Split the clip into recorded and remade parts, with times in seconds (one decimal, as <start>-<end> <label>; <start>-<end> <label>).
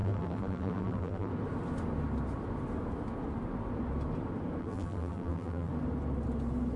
0.0-1.3 remade; 1.3-4.6 recorded; 4.6-5.7 remade; 5.7-6.8 recorded